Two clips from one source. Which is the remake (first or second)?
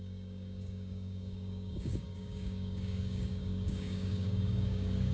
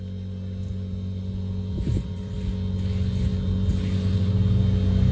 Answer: first